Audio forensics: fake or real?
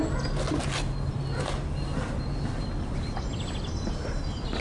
real